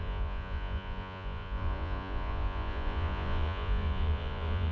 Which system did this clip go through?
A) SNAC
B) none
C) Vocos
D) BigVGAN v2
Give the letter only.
C